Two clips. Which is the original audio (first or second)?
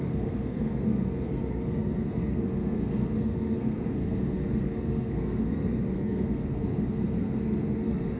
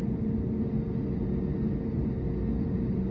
second